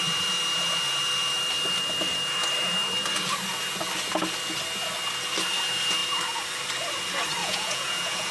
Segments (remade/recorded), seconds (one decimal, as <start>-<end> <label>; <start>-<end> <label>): 0.0-7.4 recorded; 7.4-8.3 remade